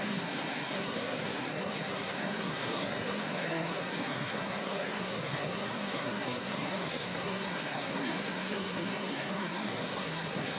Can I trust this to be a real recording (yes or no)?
no